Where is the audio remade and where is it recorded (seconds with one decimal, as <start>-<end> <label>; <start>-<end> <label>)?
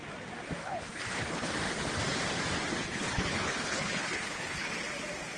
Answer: 0.0-0.6 recorded; 0.6-1.5 remade; 1.5-2.8 recorded; 2.8-4.7 remade; 4.7-5.4 recorded